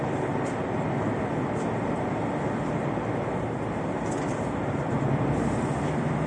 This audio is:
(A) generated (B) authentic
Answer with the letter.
B